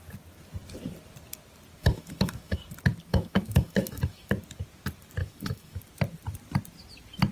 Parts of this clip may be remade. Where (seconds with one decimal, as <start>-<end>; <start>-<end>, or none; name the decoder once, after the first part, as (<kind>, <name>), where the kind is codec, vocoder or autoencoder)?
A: 1.8-2.6 (autoencoder, DAC-VAE); 3.1-4.3; 5.2-5.8